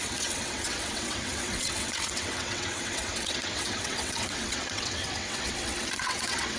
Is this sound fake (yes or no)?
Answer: yes